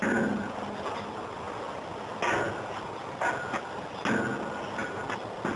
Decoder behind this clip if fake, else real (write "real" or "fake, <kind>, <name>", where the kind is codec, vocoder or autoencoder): real